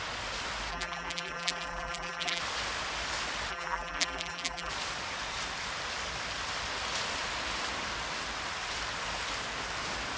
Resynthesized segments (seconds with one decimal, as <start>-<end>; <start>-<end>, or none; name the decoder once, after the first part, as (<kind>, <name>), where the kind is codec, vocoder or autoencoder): 0.7-2.4 (vocoder, BigVGAN v2); 3.5-4.7